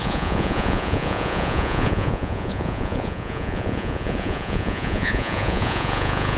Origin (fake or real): fake